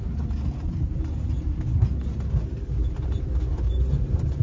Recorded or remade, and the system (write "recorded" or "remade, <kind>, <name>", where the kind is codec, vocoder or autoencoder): recorded